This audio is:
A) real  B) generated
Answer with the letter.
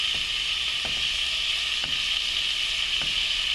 A